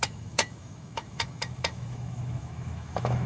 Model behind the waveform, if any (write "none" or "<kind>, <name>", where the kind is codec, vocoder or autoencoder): autoencoder, DAC-VAE